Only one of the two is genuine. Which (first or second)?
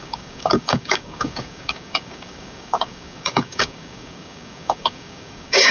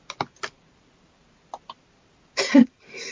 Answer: second